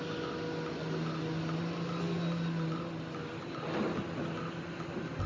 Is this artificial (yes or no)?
no